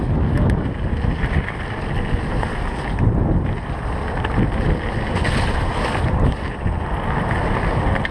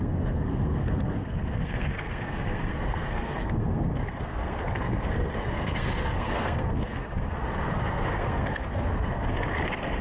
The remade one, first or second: second